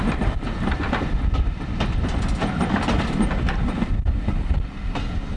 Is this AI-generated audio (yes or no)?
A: no